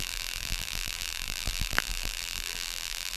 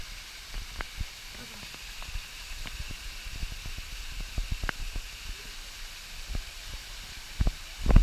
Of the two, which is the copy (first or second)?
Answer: first